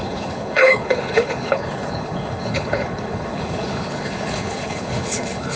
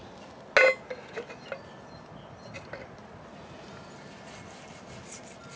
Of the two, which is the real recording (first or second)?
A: second